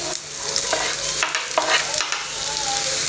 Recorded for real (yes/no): yes